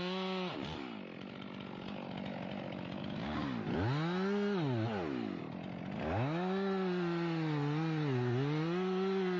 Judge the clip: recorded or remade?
recorded